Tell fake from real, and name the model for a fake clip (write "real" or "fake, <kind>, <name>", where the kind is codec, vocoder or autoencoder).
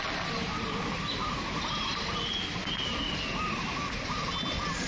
real